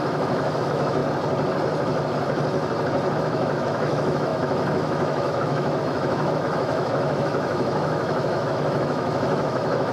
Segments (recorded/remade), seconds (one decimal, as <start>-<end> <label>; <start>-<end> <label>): 0.0-1.0 remade; 1.0-3.2 recorded; 3.2-9.9 remade